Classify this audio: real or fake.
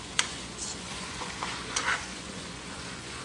fake